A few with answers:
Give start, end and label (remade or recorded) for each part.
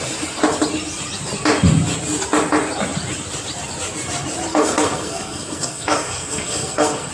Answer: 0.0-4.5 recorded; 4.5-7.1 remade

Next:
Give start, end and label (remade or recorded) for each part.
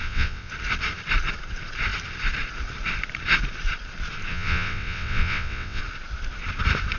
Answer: 0.0-0.5 remade; 0.5-4.3 recorded; 4.3-5.8 remade; 5.8-7.0 recorded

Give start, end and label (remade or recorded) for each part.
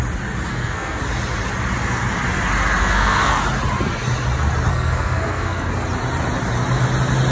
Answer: 0.0-0.5 recorded; 0.5-1.0 remade; 1.0-2.8 recorded; 2.8-3.4 remade; 3.4-4.7 recorded; 4.7-5.7 remade; 5.7-7.3 recorded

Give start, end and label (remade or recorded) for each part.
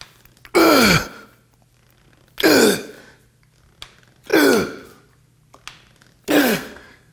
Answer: 0.0-6.4 recorded; 6.4-7.1 remade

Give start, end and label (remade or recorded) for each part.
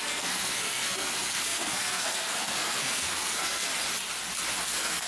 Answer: 0.0-3.7 remade; 3.7-4.6 recorded; 4.6-5.1 remade